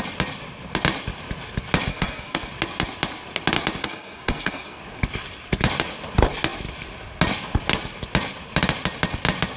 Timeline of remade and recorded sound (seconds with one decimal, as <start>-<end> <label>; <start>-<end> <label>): 0.0-1.9 recorded; 1.9-2.5 remade; 2.5-3.8 recorded; 3.8-4.8 remade; 4.8-9.6 recorded